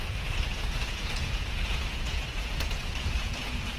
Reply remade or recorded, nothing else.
remade